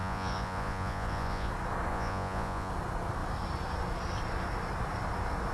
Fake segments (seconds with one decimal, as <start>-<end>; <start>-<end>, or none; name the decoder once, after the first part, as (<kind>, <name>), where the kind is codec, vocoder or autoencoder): 0.0-1.5 (vocoder, Vocos); 1.9-2.7